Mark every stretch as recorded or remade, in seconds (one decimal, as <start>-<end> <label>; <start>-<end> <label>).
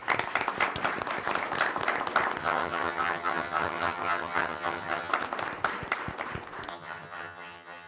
0.0-2.4 recorded; 2.4-5.1 remade; 5.1-6.7 recorded; 6.7-7.9 remade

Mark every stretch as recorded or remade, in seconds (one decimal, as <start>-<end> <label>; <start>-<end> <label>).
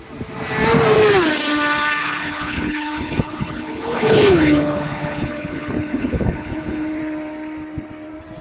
0.0-2.0 recorded; 2.0-7.0 remade; 7.0-8.4 recorded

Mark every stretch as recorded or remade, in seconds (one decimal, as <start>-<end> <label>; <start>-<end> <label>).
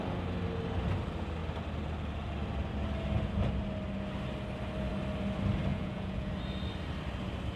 0.0-5.7 recorded; 5.7-6.3 remade; 6.3-7.6 recorded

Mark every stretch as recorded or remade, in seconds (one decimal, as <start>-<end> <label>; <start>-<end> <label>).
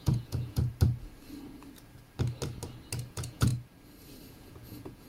0.0-0.7 remade; 0.7-3.1 recorded; 3.1-3.5 remade; 3.5-4.3 recorded; 4.3-5.1 remade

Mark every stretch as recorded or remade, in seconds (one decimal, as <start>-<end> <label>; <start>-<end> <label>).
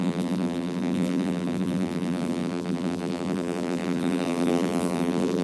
0.0-5.4 remade